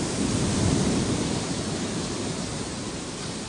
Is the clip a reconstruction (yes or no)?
no